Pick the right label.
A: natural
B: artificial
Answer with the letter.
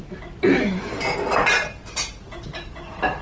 A